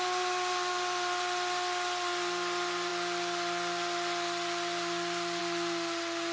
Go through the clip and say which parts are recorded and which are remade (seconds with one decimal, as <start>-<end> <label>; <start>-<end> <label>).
0.0-6.3 recorded